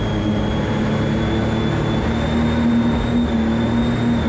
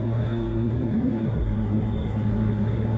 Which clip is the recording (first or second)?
first